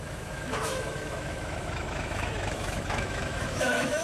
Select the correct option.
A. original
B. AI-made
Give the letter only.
B